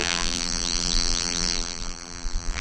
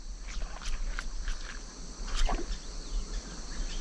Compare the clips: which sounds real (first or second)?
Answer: second